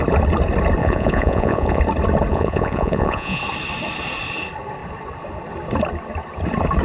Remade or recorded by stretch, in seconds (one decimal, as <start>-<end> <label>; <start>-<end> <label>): 0.0-0.8 recorded; 0.8-1.8 remade; 1.8-2.3 recorded; 2.3-3.4 remade; 3.4-6.8 recorded